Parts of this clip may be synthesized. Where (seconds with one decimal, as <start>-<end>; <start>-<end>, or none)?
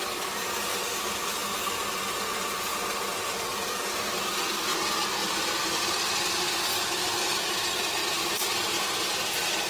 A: 3.5-4.2; 5.2-5.8; 8.0-8.8